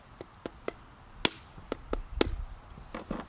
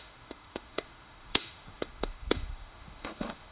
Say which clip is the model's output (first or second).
second